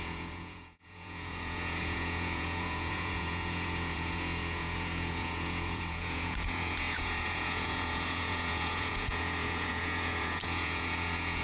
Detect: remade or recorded remade